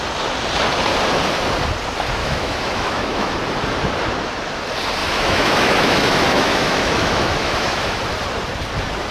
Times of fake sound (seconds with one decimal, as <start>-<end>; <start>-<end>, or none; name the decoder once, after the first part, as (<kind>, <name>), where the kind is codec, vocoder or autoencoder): 2.2-3.3 (autoencoder, DAC-VAE); 5.0-8.0